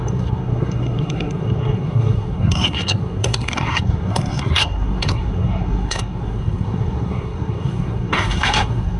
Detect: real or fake fake